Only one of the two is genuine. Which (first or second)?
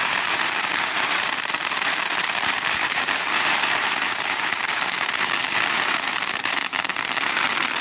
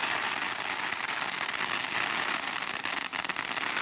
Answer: second